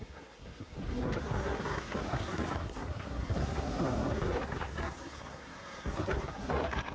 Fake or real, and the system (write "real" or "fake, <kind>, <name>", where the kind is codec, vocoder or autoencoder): fake, codec, SNAC